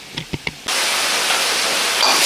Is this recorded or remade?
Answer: recorded